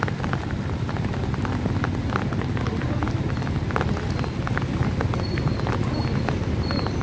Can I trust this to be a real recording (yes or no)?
yes